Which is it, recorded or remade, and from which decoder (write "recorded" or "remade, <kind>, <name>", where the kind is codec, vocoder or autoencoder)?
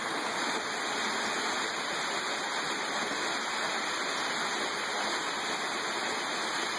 recorded